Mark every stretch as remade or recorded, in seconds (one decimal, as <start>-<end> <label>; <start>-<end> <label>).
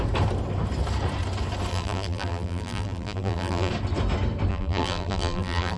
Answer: 0.0-1.7 recorded; 1.7-3.7 remade; 3.7-4.5 recorded; 4.5-5.8 remade